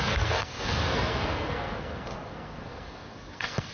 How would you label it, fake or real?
fake